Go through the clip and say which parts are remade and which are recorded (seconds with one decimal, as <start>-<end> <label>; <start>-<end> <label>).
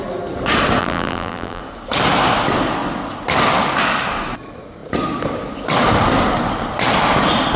0.0-0.8 recorded; 0.8-1.6 remade; 1.6-7.6 recorded